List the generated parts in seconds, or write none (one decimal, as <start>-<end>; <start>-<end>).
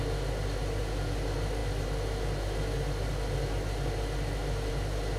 none